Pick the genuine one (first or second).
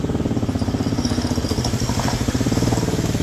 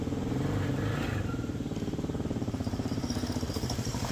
first